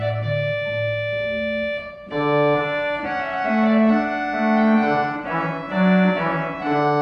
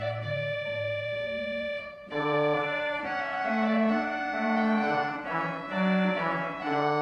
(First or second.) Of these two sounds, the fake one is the second